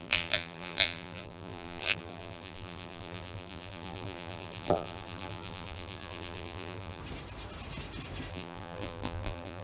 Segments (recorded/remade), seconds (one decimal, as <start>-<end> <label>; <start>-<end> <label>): 0.0-7.0 remade; 7.0-8.3 recorded; 8.3-9.6 remade